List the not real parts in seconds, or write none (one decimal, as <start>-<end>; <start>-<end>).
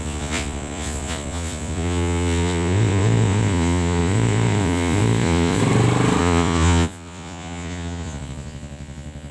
0.0-5.6; 6.2-9.3